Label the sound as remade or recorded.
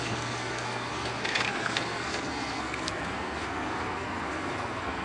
remade